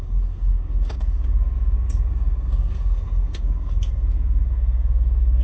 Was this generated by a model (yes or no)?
yes